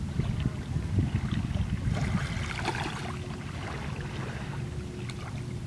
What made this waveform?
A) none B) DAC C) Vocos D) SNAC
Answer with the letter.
A